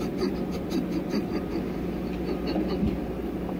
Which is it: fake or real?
real